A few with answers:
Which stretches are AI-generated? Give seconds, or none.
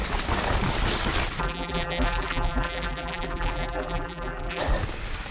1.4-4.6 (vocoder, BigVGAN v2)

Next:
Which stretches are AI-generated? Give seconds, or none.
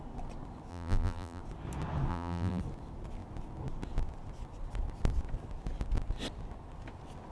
0.7-1.4 (vocoder, BigVGAN v2); 2.1-2.6